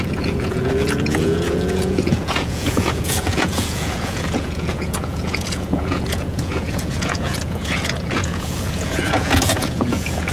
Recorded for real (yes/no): no